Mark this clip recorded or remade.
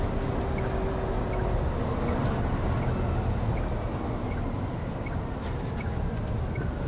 recorded